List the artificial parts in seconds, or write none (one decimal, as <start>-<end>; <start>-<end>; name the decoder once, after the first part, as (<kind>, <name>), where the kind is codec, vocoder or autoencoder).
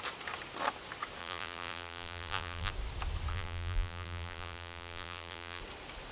1.2-2.7 (vocoder, BigVGAN v2); 3.3-5.6